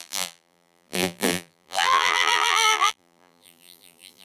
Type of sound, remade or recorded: remade